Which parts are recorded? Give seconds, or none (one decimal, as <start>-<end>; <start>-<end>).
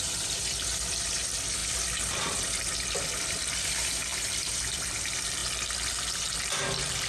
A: 5.4-6.6